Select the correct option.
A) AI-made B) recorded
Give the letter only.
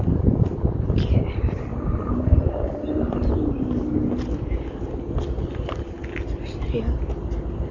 B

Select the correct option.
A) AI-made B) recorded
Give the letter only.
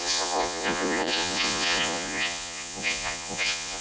A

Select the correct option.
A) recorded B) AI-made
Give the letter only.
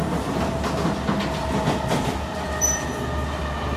A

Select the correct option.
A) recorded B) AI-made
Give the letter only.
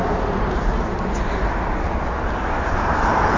A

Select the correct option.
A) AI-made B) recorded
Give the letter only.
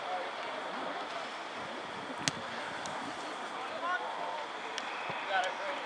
B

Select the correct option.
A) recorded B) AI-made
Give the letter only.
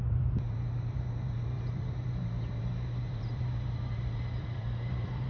B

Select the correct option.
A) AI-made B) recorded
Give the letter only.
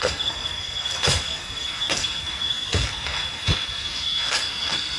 A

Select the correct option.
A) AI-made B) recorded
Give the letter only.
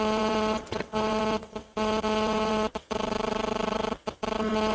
A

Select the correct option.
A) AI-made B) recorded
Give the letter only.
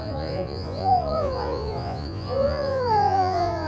A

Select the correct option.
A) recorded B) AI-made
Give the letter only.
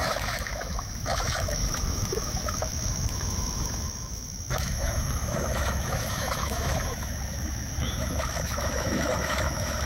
B